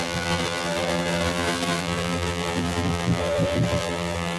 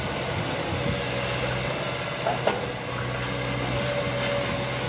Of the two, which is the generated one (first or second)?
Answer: first